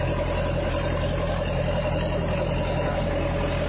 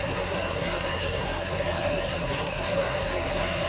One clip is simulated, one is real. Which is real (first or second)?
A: first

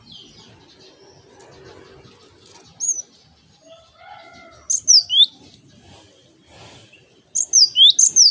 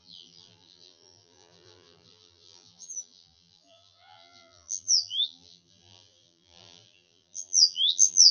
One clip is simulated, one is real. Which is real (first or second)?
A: first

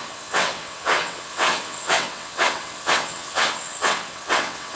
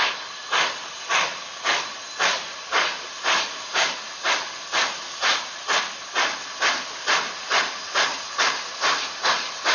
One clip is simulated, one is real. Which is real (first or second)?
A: second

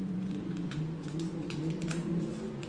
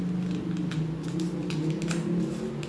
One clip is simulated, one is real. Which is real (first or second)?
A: second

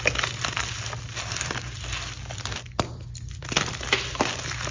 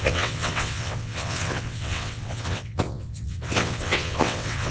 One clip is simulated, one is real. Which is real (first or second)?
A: first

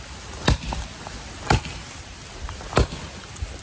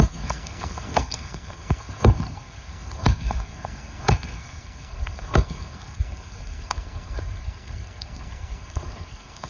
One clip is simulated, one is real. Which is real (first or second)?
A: first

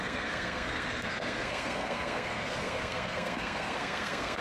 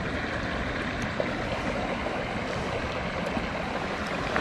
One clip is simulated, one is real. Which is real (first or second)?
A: second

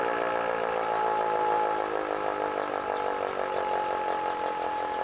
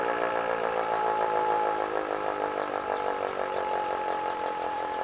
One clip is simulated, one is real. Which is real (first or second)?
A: first